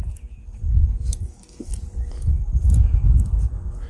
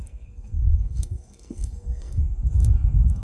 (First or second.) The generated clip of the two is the second